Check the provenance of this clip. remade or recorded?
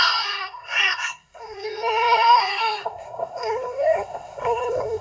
remade